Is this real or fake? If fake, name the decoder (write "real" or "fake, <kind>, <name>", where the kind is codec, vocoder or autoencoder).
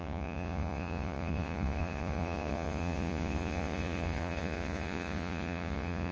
fake, vocoder, Vocos